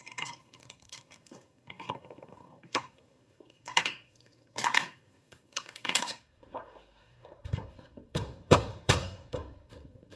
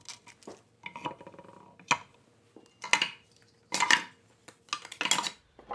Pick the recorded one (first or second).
second